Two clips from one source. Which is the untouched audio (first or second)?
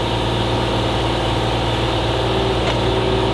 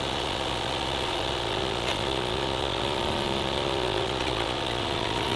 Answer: first